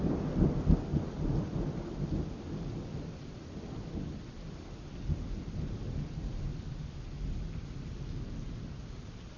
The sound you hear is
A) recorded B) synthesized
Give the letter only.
A